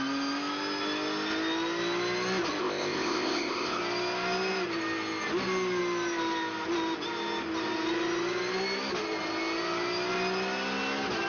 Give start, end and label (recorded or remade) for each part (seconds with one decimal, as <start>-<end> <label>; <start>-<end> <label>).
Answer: 0.0-2.6 recorded; 2.6-3.8 remade; 3.8-11.3 recorded